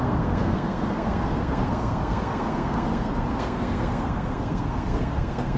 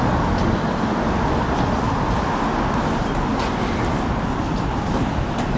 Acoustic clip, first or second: second